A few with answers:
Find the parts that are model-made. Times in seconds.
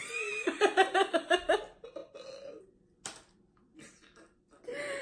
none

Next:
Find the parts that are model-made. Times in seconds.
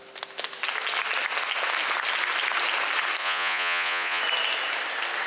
3.2-4.2 (vocoder, Vocos)